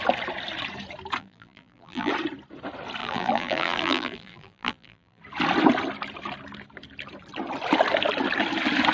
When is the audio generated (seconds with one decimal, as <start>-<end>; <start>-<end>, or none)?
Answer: 1.2-2.1; 3.0-5.2